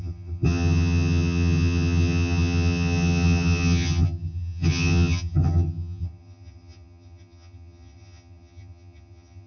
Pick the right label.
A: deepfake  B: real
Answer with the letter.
A